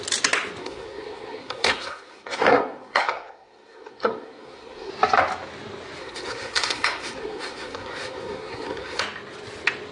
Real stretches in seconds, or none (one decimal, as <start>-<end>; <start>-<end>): 0.0-0.6; 4.9-6.0; 9.0-9.9